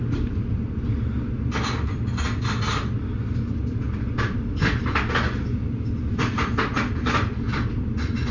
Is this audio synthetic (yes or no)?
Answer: no